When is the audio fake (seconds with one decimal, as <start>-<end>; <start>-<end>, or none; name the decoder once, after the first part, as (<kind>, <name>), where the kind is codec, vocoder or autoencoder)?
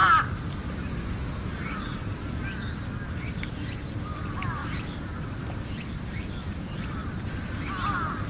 0.0-0.7 (vocoder, BigVGAN v2); 4.6-5.8